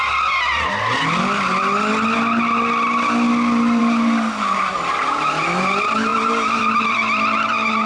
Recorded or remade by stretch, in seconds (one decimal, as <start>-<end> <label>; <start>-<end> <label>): 0.0-3.8 recorded; 3.8-7.9 remade